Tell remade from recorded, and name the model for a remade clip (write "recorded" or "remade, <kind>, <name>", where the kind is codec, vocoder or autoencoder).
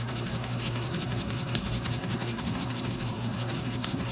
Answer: remade, codec, SNAC